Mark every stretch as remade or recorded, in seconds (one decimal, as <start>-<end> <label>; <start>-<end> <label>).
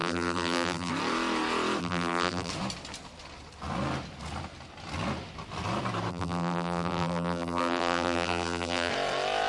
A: 0.0-0.9 remade; 0.9-1.8 recorded; 1.8-2.5 remade; 2.5-6.1 recorded; 6.1-8.9 remade; 8.9-9.5 recorded